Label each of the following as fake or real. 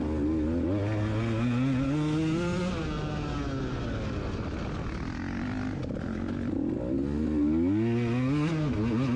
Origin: real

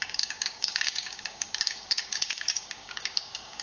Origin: fake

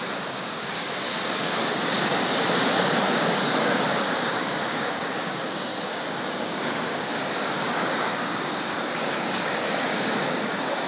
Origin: fake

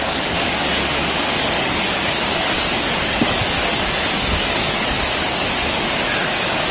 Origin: fake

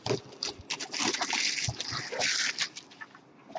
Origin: fake